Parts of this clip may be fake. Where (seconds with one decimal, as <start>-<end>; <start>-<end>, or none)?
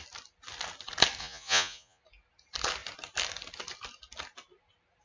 1.2-2.0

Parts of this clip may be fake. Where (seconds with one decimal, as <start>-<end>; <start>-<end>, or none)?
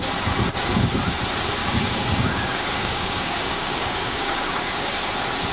1.6-4.9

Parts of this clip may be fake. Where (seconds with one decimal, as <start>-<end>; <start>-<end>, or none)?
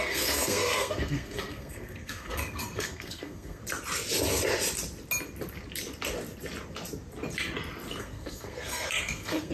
0.0-3.6; 8.0-9.5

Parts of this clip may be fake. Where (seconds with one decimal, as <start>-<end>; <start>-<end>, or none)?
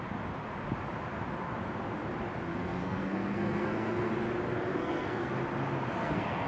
2.5-4.1; 4.7-5.3; 6.0-6.5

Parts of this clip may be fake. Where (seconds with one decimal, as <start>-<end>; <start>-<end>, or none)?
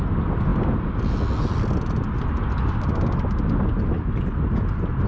none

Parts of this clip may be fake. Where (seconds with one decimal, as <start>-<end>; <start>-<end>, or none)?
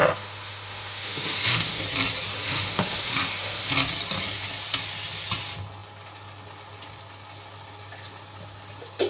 0.0-1.8; 2.3-3.7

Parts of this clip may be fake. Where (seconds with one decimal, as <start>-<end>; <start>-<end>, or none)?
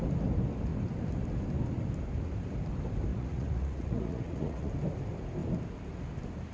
3.1-4.7